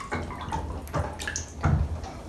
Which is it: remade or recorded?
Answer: recorded